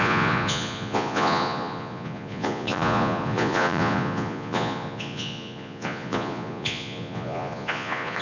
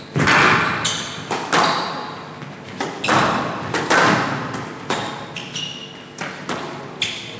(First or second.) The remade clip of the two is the first